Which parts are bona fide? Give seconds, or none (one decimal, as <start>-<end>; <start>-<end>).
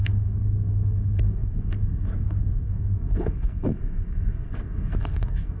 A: none